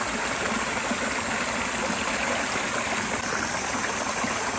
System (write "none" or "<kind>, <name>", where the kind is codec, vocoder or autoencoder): none